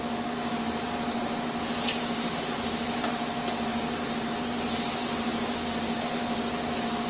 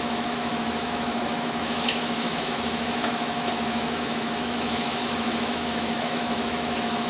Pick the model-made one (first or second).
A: second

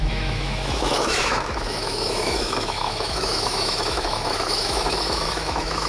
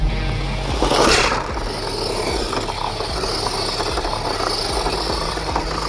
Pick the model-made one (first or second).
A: first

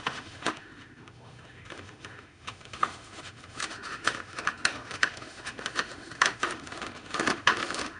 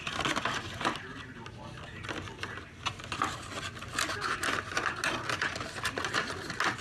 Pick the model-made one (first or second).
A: first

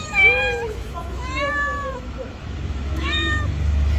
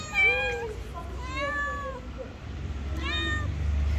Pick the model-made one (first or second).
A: first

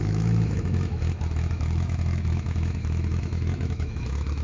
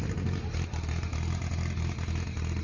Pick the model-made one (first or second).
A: first